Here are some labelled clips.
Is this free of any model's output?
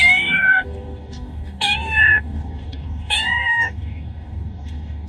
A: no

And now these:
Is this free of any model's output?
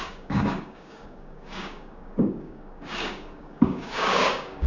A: no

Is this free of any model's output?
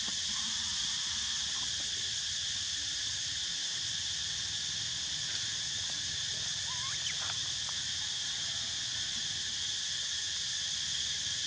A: yes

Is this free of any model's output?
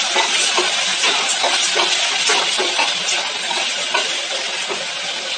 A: yes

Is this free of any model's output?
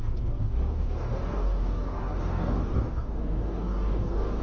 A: no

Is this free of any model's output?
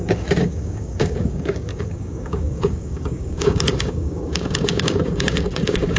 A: no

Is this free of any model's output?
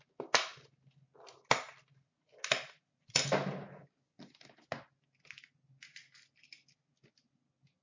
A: yes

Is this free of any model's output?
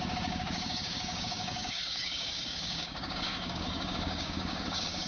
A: no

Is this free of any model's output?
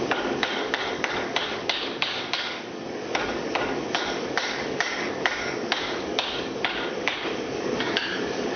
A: no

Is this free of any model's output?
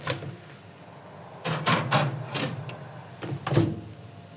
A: yes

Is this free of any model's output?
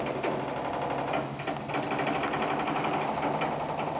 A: yes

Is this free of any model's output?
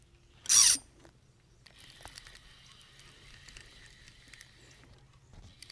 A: yes